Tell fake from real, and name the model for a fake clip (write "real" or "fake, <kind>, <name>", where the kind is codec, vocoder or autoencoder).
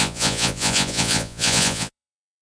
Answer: fake, vocoder, Vocos